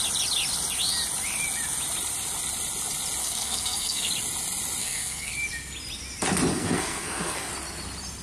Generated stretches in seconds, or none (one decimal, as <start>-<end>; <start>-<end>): 3.2-4.1; 4.8-5.3; 6.5-7.5